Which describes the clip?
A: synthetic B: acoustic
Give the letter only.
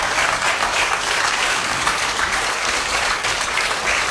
A